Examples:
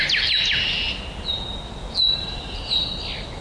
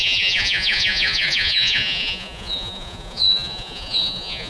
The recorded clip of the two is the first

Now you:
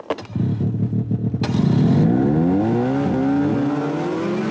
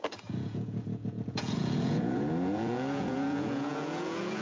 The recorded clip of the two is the first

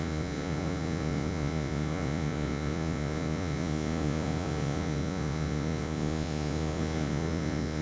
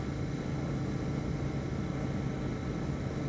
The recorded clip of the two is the second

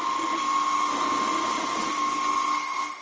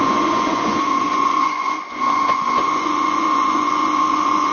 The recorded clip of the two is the first